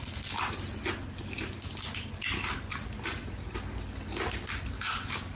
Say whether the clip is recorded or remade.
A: recorded